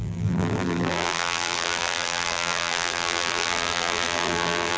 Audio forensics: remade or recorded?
remade